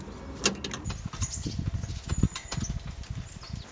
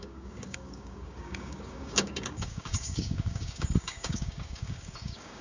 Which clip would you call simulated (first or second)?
second